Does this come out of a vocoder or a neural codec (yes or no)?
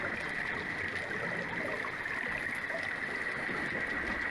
no